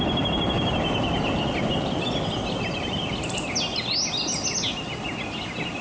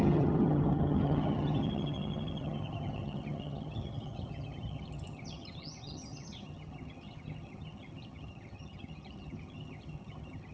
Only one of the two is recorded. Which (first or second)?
first